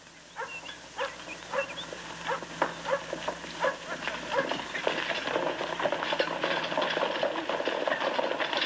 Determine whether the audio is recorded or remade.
recorded